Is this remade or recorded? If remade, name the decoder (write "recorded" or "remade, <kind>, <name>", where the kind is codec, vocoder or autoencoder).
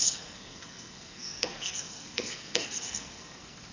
remade, codec, SNAC